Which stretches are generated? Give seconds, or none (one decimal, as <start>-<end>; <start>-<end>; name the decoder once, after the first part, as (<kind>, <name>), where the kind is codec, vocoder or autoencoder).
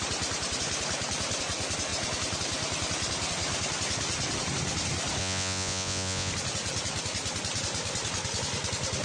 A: 5.2-6.3 (vocoder, Vocos)